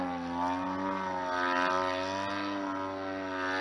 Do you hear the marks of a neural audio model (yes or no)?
no